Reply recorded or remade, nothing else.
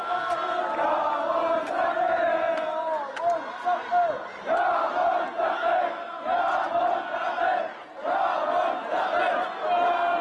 recorded